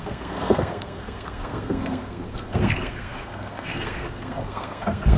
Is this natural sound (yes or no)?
no